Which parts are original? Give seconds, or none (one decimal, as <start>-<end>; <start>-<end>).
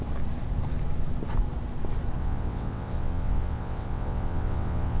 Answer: 0.0-2.2